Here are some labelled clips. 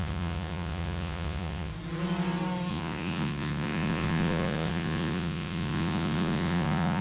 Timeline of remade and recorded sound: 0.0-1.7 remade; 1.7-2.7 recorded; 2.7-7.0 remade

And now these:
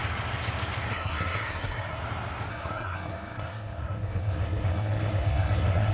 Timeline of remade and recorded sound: 0.0-0.9 recorded; 0.9-2.0 remade; 2.0-2.5 recorded; 2.5-5.9 remade